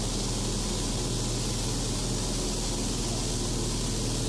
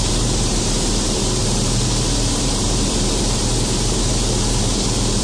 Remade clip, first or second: second